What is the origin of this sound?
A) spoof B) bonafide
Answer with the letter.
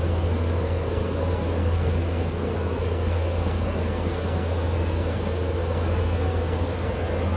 A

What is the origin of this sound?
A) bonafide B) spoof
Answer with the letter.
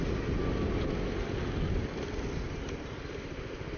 A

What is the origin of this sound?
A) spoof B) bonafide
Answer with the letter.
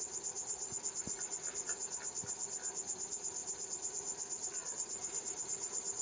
B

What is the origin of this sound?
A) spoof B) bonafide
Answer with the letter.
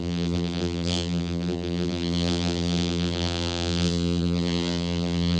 A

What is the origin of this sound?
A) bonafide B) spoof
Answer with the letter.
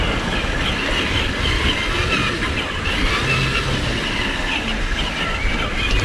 A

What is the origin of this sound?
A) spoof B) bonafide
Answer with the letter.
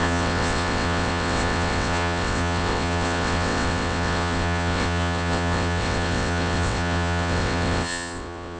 A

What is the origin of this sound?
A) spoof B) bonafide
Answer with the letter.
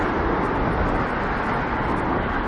B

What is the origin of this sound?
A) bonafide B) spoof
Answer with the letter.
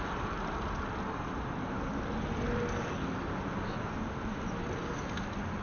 A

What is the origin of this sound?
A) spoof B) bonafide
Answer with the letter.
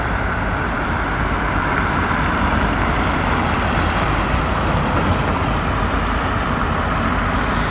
A